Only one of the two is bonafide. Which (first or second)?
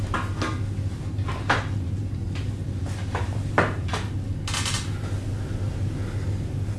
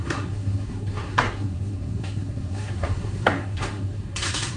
first